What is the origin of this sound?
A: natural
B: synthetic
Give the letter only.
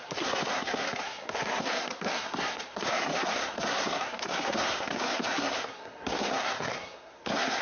B